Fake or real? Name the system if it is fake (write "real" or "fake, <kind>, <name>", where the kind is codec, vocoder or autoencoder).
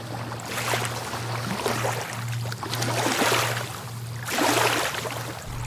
real